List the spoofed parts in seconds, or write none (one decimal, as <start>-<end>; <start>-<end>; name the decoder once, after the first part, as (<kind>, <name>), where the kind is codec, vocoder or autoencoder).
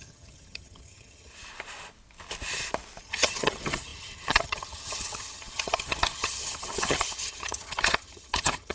0.0-1.3 (vocoder, HiFi-GAN); 3.0-8.7